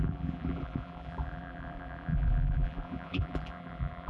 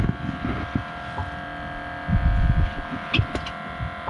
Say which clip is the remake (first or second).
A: first